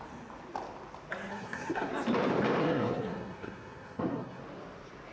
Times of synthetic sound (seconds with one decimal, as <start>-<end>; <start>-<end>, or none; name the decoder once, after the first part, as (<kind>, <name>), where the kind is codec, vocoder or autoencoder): 1.3-1.9 (codec, SNAC); 2.6-4.4